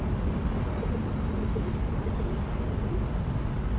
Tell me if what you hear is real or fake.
real